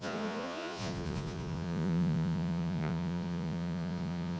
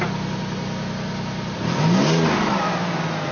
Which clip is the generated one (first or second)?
first